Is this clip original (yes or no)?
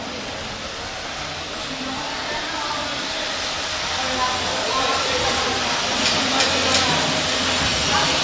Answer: yes